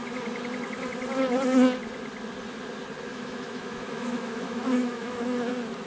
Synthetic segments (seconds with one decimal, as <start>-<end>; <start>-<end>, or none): 3.1-5.5

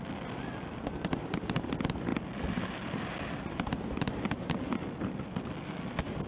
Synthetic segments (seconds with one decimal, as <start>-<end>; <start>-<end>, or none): none

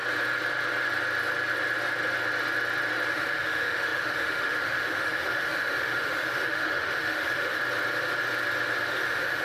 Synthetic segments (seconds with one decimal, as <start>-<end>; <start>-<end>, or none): 3.1-7.6; 8.9-9.4

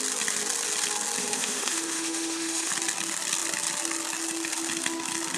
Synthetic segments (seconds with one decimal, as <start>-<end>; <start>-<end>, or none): 1.2-2.7